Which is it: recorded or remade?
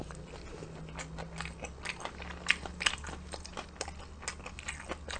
recorded